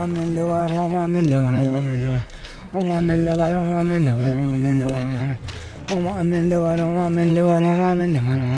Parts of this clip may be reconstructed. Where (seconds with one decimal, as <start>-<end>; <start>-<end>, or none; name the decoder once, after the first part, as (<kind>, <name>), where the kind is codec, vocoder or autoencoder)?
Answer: 0.6-5.2 (codec, SNAC); 7.3-8.0

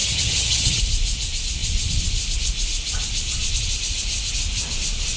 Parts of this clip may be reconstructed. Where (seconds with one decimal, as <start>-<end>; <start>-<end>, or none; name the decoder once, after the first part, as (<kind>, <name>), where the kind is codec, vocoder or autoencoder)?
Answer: 0.0-0.8 (vocoder, HiFi-GAN)

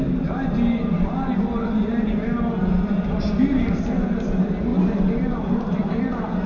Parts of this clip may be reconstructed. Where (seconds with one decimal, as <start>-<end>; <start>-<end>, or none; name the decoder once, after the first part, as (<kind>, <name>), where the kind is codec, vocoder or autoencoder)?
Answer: none

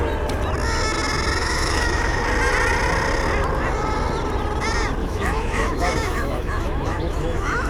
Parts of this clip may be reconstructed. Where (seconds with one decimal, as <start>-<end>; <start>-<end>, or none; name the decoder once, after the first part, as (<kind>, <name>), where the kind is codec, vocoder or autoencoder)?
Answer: 1.4-2.2 (autoencoder, DAC-VAE); 5.0-7.7